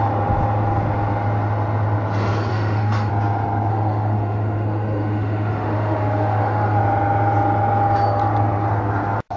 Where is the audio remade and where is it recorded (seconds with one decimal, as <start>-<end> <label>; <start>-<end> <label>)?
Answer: 0.0-2.5 recorded; 2.5-3.1 remade; 3.1-3.7 recorded; 3.7-6.8 remade; 6.8-9.4 recorded